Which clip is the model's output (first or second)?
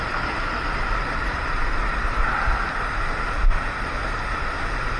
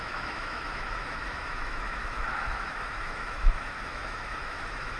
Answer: second